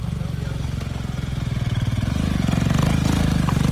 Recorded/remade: recorded